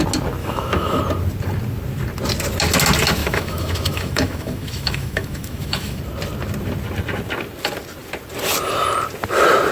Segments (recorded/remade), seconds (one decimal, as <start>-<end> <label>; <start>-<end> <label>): 0.0-0.4 recorded; 0.4-1.0 remade; 1.0-3.2 recorded; 3.2-6.0 remade; 6.0-9.7 recorded